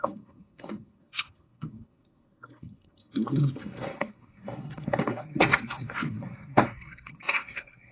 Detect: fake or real fake